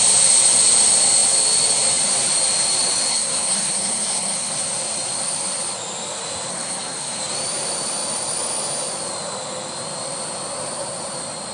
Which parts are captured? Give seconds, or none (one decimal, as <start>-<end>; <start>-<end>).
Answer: 0.0-3.1; 4.6-6.5; 7.2-11.5